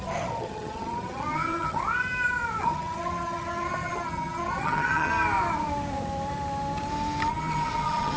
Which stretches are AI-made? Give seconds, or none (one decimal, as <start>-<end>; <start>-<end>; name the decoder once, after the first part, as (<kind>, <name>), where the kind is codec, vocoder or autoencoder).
0.0-1.8 (vocoder, HiFi-GAN); 2.6-5.1; 7.3-8.2

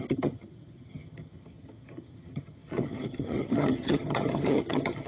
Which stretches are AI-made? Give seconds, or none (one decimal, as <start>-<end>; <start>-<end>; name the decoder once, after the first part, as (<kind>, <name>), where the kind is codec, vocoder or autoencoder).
0.0-5.1 (vocoder, HiFi-GAN)

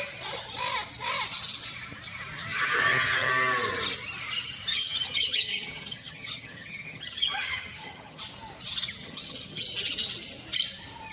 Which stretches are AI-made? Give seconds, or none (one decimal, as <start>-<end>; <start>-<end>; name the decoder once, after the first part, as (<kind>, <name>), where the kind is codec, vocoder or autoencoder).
2.5-3.3 (vocoder, HiFi-GAN); 4.7-8.2; 9.0-9.6